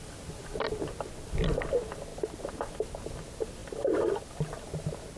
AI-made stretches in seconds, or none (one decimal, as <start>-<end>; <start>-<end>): none